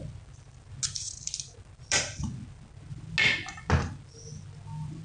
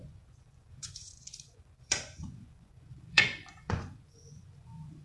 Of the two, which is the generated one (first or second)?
second